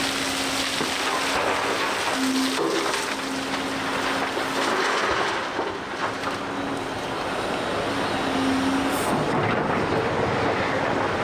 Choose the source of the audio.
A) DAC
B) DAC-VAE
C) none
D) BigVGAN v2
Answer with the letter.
C